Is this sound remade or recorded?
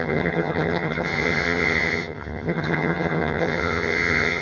remade